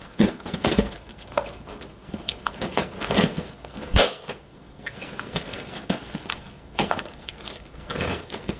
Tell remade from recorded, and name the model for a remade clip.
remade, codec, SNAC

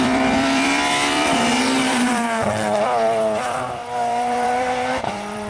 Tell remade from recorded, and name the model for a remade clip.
remade, vocoder, BigVGAN v2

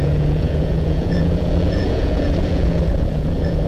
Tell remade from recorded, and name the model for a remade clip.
remade, vocoder, Vocos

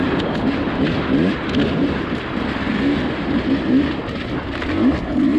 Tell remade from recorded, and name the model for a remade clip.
recorded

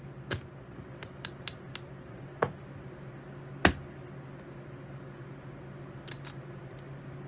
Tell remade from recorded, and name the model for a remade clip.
recorded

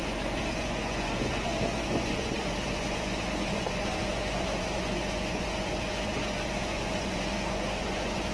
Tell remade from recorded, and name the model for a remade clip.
remade, vocoder, Vocos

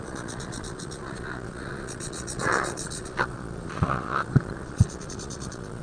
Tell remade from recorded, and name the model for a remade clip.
remade, vocoder, Vocos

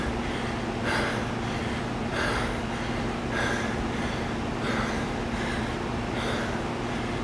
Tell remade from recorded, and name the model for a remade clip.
recorded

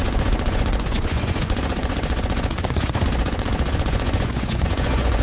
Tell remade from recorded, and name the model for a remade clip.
remade, vocoder, Vocos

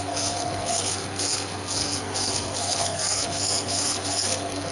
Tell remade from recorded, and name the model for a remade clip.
remade, codec, SNAC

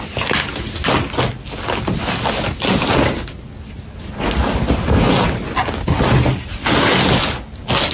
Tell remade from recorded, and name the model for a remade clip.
recorded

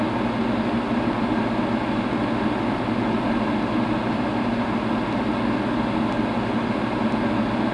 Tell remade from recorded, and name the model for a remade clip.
recorded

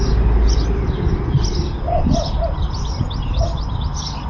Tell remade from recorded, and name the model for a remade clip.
recorded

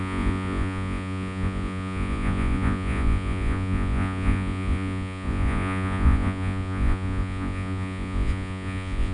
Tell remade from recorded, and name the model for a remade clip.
remade, vocoder, Vocos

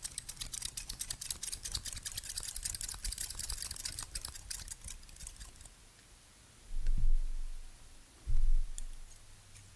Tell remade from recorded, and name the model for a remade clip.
recorded